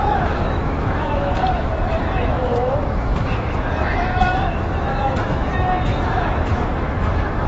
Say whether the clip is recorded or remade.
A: remade